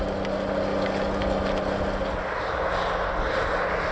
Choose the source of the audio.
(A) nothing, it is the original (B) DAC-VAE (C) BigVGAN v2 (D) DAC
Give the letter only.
A